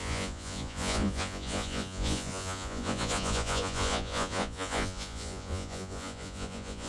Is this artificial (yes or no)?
yes